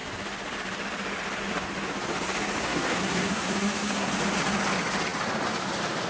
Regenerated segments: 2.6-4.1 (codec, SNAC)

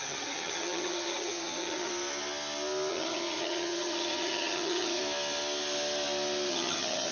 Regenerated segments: 0.0-1.9 (vocoder, HiFi-GAN); 2.9-5.0; 6.5-7.1

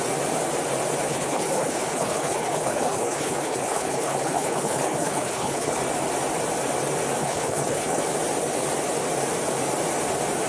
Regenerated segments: 1.1-5.8 (codec, HILCodec); 7.2-8.0

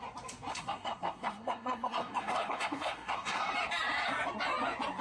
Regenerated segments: 0.5-3.5 (codec, SNAC)

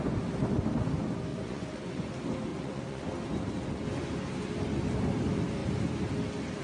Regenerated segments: 1.3-2.1 (vocoder, Vocos); 2.5-3.0

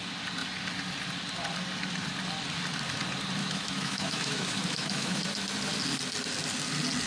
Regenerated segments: 3.4-5.2 (autoencoder, DAC-VAE)

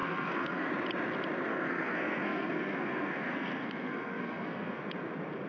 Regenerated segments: 0.0-0.7 (codec, SNAC); 1.5-4.8